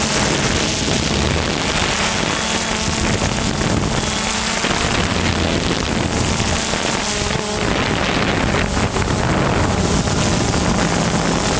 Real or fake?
real